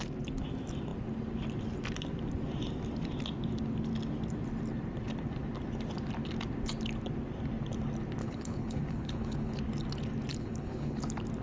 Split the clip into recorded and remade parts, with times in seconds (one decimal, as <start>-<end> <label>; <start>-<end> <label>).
0.0-8.2 recorded; 8.2-9.6 remade; 9.6-10.3 recorded; 10.3-11.0 remade; 11.0-11.4 recorded